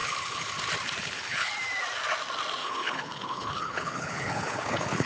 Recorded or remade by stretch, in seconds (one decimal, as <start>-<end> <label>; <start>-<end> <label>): 0.0-0.5 remade; 0.5-1.0 recorded; 1.0-1.5 remade; 1.5-2.6 recorded; 2.6-5.1 remade